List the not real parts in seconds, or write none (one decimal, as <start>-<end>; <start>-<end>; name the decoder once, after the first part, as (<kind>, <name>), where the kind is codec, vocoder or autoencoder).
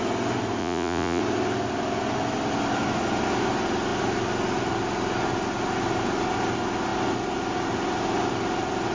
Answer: 0.6-1.2 (vocoder, Vocos)